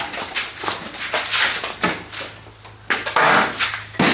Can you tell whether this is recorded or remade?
recorded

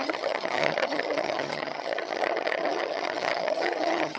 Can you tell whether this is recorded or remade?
remade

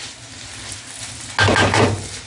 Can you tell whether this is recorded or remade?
recorded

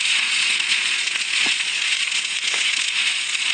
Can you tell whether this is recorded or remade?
remade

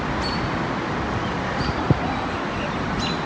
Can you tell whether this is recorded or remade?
recorded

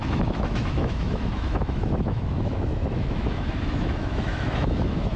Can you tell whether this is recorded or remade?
remade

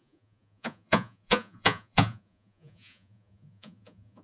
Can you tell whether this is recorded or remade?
remade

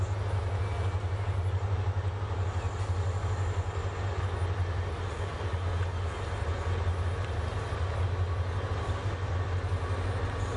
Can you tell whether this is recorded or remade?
recorded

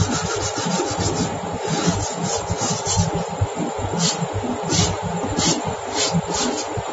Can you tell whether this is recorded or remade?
recorded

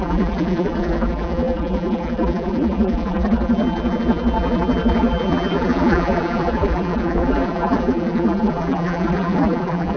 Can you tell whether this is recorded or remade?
remade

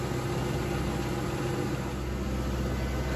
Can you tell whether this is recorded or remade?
recorded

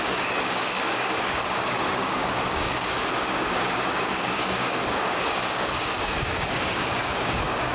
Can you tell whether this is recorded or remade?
remade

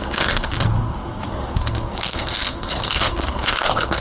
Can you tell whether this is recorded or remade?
remade